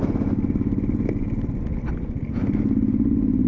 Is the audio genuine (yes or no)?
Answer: yes